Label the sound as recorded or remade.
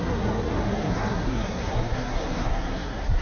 remade